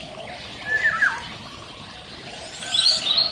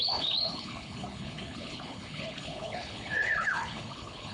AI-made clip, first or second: second